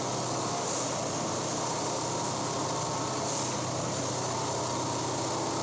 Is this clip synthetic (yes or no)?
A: no